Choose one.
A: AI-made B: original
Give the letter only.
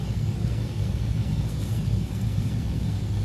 A